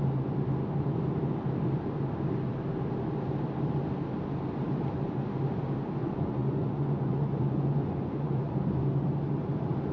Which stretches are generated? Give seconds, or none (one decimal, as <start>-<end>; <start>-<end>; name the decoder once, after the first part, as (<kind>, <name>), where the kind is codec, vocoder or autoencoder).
6.0-8.5 (vocoder, Vocos)